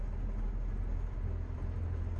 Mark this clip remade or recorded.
recorded